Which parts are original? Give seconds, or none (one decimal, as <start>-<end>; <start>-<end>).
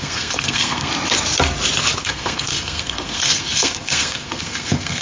0.9-2.0